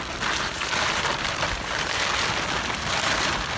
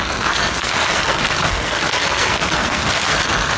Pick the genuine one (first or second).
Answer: first